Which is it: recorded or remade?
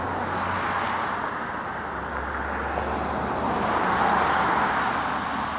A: recorded